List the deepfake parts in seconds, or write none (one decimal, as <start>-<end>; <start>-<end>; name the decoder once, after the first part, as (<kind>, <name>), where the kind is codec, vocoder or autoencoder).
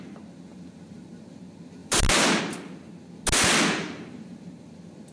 0.5-1.3 (vocoder, BigVGAN v2); 1.8-2.4; 3.8-4.4